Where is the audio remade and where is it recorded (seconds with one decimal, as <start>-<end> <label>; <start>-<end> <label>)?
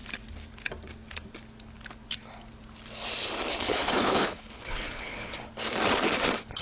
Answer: 0.0-3.7 recorded; 3.7-5.3 remade; 5.3-6.6 recorded